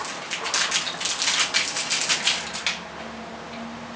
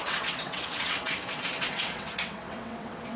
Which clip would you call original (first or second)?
first